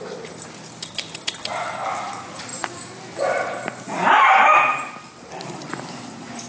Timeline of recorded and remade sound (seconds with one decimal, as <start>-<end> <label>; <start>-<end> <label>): 0.0-6.5 recorded